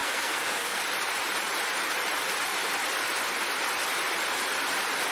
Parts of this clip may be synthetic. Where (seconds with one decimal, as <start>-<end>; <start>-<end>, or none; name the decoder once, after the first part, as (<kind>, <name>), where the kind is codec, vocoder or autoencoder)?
0.0-0.8 (codec, SNAC)